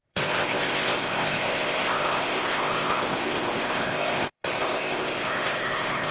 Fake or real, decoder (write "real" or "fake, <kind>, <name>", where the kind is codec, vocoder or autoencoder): fake, codec, ZipCodec